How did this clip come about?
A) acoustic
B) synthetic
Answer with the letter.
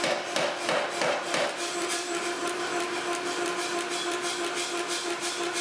A